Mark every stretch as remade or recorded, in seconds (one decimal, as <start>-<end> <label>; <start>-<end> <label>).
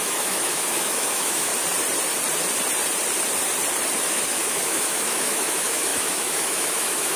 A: 0.0-1.5 remade; 1.5-4.1 recorded; 4.1-7.2 remade